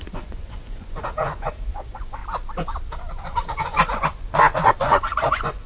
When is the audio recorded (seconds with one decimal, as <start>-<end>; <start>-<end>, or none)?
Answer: 2.2-3.2